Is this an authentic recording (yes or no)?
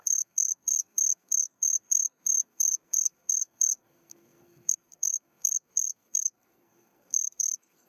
no